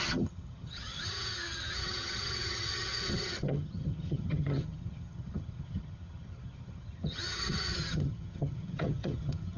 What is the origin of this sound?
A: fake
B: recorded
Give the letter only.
A